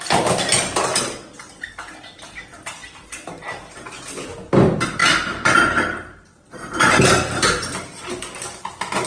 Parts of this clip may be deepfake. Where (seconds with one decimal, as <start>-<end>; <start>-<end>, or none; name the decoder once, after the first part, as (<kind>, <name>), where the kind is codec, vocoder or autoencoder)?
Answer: none